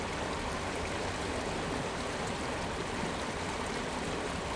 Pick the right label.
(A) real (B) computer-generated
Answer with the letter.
A